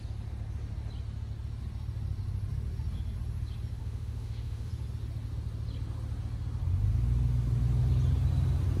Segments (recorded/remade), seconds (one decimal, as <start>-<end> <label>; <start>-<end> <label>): 0.0-3.8 recorded; 3.8-4.7 remade; 4.7-8.8 recorded